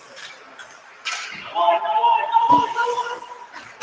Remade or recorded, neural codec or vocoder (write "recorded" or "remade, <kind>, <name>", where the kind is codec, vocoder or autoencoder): remade, vocoder, BigVGAN v2